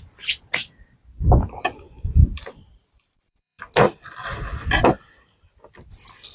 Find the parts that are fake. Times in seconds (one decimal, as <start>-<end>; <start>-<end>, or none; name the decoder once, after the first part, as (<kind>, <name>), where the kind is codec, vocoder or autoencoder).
2.2-3.6 (vocoder, BigVGAN v2)

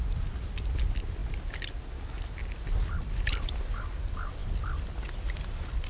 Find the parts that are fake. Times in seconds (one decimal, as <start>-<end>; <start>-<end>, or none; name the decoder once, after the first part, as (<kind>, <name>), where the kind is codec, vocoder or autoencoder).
4.4-5.1 (vocoder, BigVGAN v2)

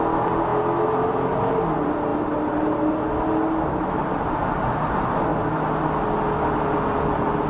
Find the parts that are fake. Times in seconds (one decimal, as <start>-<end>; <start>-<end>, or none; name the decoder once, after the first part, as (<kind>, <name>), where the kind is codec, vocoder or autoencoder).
none

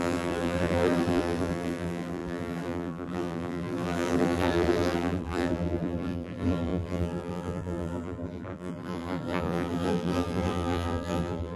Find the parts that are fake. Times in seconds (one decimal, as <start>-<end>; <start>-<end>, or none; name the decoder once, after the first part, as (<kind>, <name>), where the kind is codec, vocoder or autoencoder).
0.0-11.6 (vocoder, BigVGAN v2)

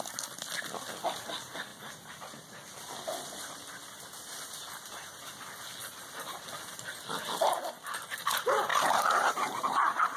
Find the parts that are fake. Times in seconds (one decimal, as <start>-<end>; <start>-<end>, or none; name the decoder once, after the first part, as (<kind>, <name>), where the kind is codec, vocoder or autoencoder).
5.8-6.4 (vocoder, BigVGAN v2); 8.7-10.2